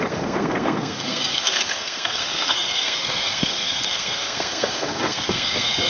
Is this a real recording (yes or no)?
no